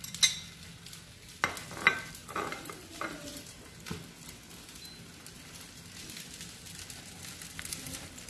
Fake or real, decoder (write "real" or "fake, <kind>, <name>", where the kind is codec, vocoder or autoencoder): real